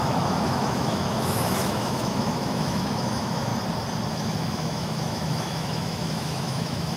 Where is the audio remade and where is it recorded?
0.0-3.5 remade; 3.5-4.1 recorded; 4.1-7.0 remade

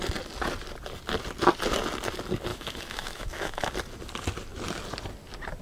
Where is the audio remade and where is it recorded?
0.0-2.5 recorded; 2.5-3.7 remade; 3.7-5.6 recorded